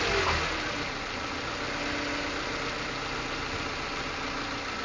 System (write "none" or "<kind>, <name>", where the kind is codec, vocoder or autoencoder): none